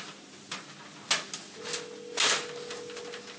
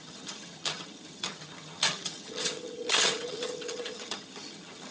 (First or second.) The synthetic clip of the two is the second